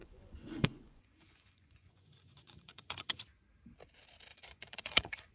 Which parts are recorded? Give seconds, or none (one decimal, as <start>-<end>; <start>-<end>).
3.2-4.3

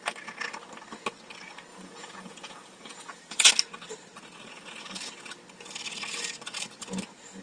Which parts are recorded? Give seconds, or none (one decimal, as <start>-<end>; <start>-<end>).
0.0-1.7; 3.5-7.4